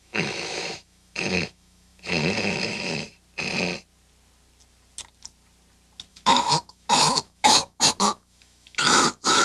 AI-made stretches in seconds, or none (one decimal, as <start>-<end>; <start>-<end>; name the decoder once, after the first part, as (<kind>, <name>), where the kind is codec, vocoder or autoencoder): 0.0-3.1 (autoencoder, DAC-VAE); 6.1-9.4